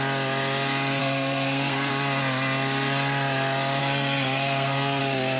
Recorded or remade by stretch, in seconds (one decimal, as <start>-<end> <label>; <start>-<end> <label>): 0.0-1.0 recorded; 1.0-1.9 remade; 1.9-3.8 recorded; 3.8-5.0 remade; 5.0-5.4 recorded